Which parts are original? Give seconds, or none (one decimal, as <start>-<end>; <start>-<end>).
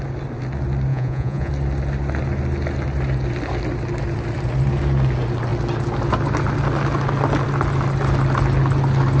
0.0-0.9; 1.5-9.2